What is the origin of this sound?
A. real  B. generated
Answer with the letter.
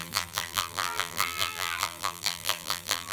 B